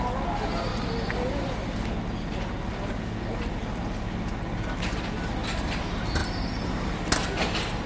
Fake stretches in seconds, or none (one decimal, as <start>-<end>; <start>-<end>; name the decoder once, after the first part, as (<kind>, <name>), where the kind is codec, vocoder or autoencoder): none